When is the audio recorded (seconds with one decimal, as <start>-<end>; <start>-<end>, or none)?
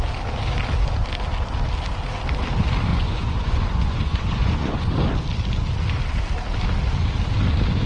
0.0-2.9; 4.9-7.9